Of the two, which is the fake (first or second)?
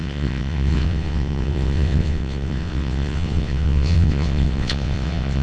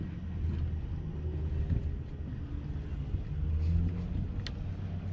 first